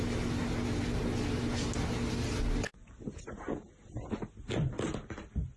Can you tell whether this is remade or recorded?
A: recorded